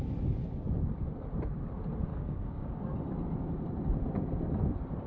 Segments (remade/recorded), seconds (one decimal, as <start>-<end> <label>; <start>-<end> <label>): 0.0-2.1 recorded; 2.1-2.8 remade; 2.8-5.1 recorded